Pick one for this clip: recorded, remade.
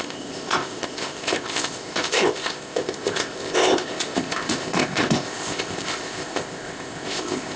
remade